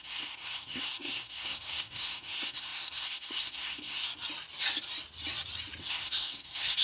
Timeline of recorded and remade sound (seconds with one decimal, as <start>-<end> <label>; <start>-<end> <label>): 0.0-4.1 remade; 4.1-5.8 recorded; 5.8-6.8 remade